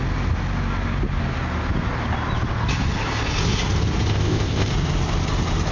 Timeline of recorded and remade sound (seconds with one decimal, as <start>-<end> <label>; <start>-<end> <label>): 0.0-4.1 recorded; 4.1-4.7 remade; 4.7-5.7 recorded

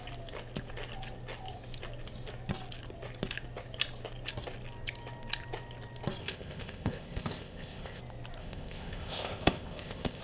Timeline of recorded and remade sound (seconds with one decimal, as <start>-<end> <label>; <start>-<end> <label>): 0.0-6.2 recorded; 6.2-8.0 remade; 8.0-8.4 recorded; 8.4-10.2 remade

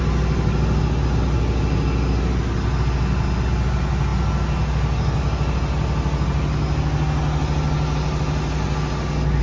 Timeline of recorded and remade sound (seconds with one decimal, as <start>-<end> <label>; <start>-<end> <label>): 0.0-9.4 recorded

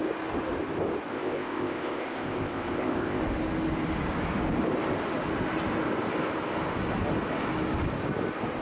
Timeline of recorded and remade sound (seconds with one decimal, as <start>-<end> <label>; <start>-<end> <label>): 0.0-1.1 recorded; 1.1-3.2 remade; 3.2-8.6 recorded

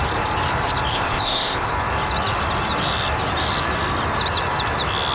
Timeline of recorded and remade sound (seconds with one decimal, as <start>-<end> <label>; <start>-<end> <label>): 0.0-0.9 recorded; 0.9-1.7 remade; 1.7-5.1 recorded